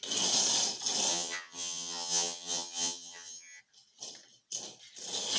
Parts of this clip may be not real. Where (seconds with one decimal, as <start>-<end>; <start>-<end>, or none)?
1.1-3.6